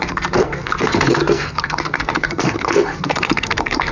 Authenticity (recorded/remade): remade